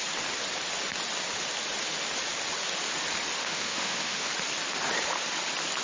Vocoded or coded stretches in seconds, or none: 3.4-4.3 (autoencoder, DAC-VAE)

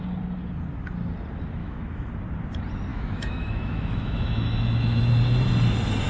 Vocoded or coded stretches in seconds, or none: 1.6-2.1 (autoencoder, DAC-VAE); 2.9-5.0

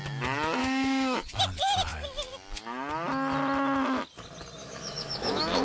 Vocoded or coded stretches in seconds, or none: 0.6-1.4 (autoencoder, DAC-VAE); 4.6-5.6

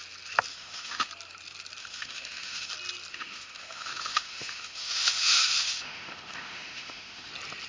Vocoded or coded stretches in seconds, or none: 0.5-1.1 (autoencoder, DAC-VAE); 1.8-2.7; 3.1-7.3

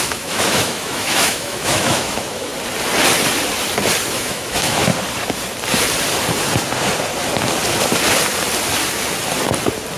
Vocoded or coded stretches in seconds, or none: 0.0-2.5 (autoencoder, DAC-VAE); 4.1-4.9

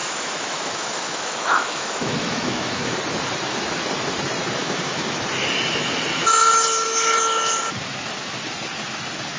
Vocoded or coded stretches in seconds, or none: 0.0-3.0 (autoencoder, DAC-VAE); 4.6-5.2